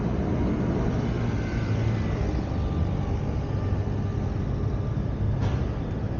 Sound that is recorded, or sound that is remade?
recorded